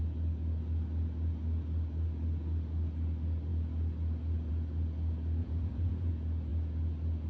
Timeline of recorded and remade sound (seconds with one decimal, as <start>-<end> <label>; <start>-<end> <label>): 0.0-5.4 recorded; 5.4-6.1 remade; 6.1-7.3 recorded